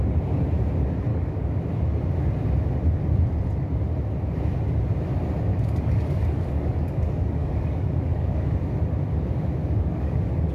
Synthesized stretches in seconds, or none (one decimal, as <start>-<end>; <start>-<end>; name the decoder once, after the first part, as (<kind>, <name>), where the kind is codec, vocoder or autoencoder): 1.1-1.6 (codec, DAC); 5.5-8.7; 9.6-10.5